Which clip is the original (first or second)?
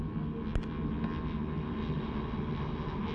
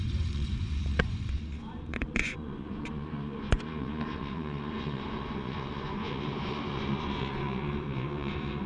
first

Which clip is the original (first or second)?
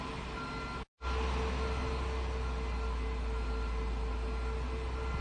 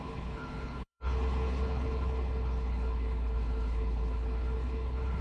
first